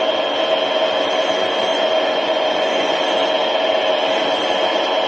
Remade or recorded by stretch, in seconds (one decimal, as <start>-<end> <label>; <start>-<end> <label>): 0.0-1.7 recorded; 1.7-3.0 remade; 3.0-5.1 recorded